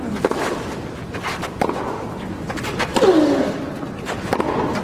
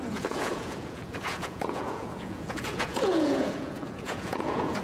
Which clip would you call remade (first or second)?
second